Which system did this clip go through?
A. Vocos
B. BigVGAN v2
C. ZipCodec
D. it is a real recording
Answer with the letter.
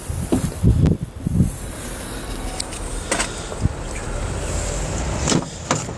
B